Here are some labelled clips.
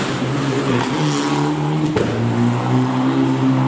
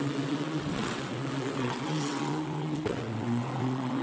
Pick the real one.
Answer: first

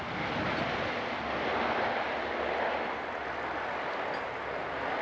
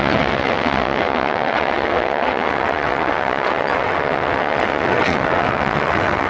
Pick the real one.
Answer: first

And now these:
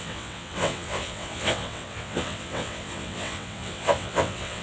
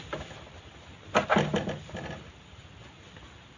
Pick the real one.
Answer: second